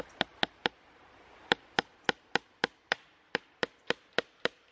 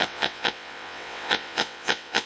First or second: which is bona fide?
first